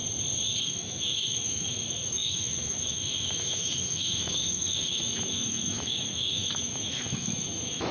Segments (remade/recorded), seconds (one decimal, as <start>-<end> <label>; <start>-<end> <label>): 0.0-0.6 recorded; 0.6-7.9 remade